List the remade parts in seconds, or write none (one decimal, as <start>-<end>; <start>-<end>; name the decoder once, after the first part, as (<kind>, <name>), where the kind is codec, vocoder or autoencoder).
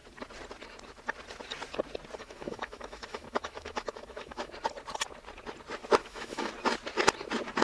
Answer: 2.2-4.5 (autoencoder, DAC-VAE); 6.0-6.5